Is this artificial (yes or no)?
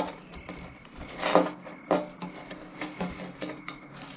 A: no